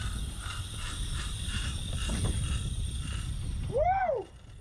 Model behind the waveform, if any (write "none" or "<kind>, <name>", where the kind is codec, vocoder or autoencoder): vocoder, BigVGAN v2